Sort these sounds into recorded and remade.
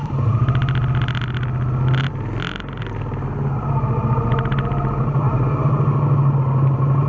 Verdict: recorded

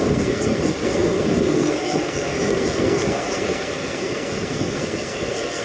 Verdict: remade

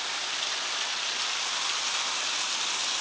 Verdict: recorded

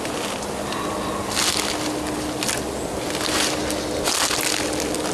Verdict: recorded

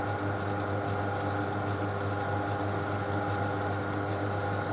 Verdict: recorded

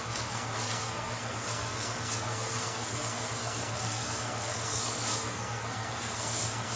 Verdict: remade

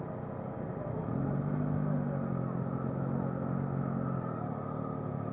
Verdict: recorded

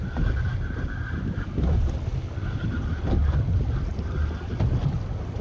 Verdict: recorded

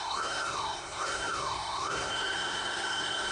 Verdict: remade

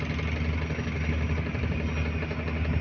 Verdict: recorded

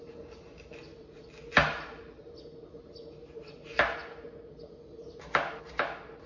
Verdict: recorded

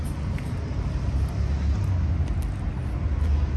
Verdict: recorded